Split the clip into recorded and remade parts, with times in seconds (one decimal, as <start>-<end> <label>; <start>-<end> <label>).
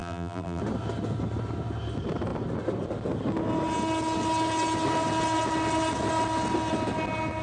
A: 0.0-0.6 remade; 0.6-7.4 recorded